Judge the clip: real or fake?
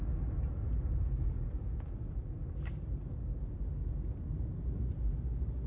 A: real